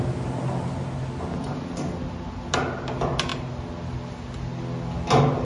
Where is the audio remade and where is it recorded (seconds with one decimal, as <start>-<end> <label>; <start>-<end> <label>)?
0.0-5.4 recorded